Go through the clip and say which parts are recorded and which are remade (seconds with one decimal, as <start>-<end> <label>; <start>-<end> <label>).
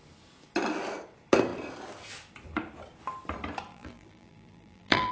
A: 0.0-3.7 recorded; 3.7-5.1 remade